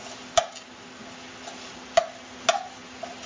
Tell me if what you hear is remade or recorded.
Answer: recorded